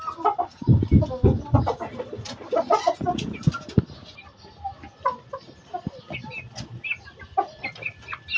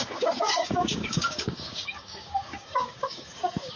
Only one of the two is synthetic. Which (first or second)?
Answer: second